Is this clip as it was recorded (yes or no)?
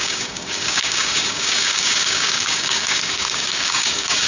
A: no